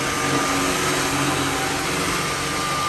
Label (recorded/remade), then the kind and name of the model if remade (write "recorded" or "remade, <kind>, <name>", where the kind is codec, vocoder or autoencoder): recorded